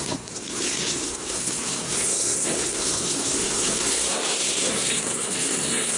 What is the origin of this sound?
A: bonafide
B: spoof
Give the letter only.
B